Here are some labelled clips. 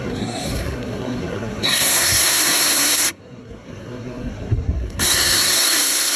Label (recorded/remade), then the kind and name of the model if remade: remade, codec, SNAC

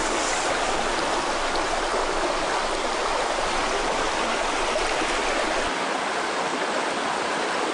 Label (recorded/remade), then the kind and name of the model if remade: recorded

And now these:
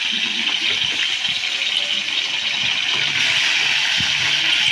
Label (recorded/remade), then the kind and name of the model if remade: recorded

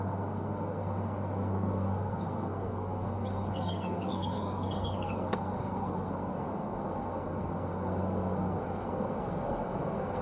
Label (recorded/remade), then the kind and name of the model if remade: remade, codec, SNAC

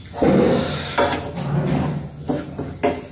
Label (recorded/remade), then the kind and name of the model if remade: recorded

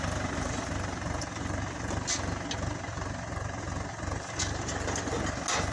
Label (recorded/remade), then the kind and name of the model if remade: recorded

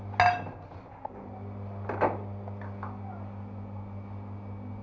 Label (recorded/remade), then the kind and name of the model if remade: recorded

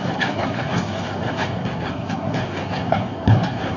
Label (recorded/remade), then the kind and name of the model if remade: remade, codec, SNAC